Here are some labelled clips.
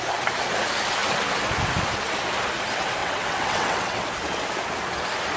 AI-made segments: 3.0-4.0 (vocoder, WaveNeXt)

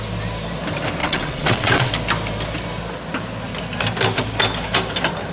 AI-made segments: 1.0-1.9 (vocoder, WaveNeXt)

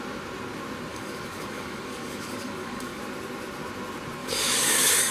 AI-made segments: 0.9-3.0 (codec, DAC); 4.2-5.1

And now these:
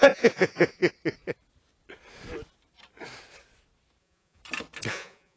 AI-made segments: 0.0-0.8 (vocoder, Vocos); 4.0-4.4; 4.9-5.4

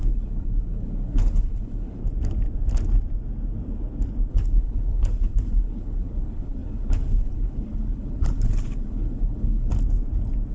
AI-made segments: 0.0-2.0 (codec, HILCodec); 4.3-9.7

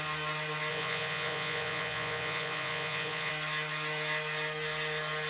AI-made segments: 0.7-3.3 (vocoder, Vocos)